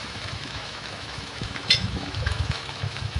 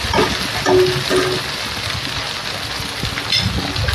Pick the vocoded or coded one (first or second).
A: first